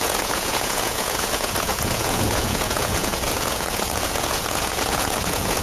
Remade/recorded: remade